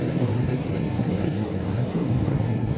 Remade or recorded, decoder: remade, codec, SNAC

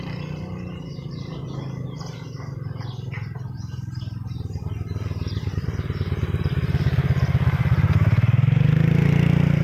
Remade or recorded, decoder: recorded